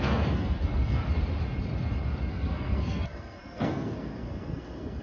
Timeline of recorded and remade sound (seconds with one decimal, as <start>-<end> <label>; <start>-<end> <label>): 0.0-1.0 remade; 1.0-2.3 recorded; 2.3-5.0 remade